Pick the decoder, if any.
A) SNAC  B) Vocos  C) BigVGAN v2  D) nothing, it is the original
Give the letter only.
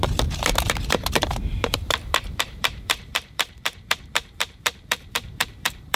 C